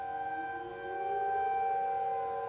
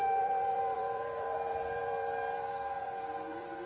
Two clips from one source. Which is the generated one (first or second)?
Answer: second